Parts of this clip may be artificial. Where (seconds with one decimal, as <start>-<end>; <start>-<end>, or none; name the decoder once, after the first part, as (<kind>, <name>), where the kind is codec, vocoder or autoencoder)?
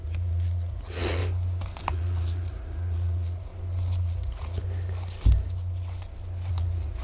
0.0-1.2 (vocoder, Vocos); 1.9-3.5; 4.0-4.6; 6.5-7.0